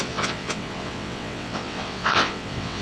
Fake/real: fake